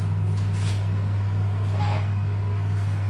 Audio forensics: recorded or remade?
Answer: remade